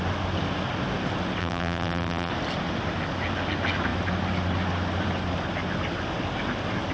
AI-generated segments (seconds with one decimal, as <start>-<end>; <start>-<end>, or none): 1.4-2.3